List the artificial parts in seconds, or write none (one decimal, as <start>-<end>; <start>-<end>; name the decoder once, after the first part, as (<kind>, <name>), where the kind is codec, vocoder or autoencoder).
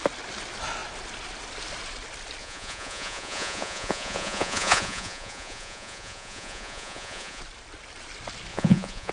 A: 2.4-7.4 (vocoder, Vocos); 8.5-9.1